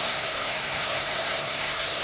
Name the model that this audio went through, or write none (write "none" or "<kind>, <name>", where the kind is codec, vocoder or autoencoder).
codec, SNAC